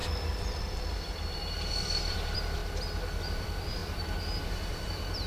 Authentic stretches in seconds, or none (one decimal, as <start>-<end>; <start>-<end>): 2.6-3.2; 3.8-4.4